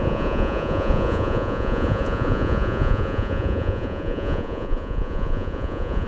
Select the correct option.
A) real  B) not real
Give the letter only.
B